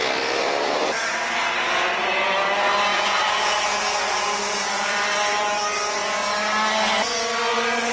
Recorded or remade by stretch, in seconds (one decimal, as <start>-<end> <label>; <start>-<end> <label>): 0.0-2.9 recorded; 2.9-4.8 remade; 4.8-7.9 recorded